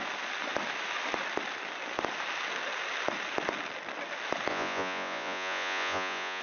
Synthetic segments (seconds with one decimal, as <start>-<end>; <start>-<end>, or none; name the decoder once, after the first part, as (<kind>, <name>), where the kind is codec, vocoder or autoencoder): 4.5-6.4 (vocoder, Vocos)

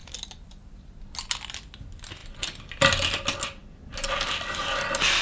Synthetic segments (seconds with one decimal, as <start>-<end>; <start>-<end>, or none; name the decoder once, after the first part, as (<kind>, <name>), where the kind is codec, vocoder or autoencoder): none

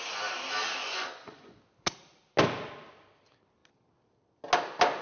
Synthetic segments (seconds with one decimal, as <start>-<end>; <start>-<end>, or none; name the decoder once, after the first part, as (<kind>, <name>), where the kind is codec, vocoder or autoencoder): 0.8-1.6 (vocoder, Vocos)

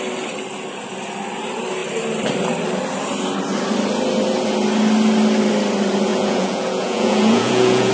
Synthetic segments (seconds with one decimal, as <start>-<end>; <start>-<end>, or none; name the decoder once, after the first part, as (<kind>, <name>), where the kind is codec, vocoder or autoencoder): 6.1-7.9 (vocoder, Vocos)

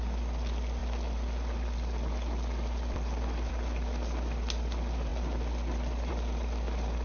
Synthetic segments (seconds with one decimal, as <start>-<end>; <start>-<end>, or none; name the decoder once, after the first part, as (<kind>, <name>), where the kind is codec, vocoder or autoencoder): none

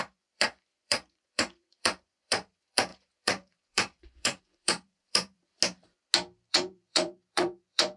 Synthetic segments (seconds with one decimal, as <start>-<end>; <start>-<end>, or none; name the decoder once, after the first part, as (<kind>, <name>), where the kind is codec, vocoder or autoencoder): 0.0-5.4 (vocoder, Vocos); 6.5-8.0

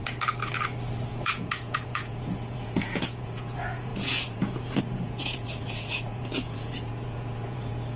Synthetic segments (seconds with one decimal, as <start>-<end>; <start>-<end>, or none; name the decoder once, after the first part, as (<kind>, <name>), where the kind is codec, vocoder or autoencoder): 1.1-8.0 (vocoder, Vocos)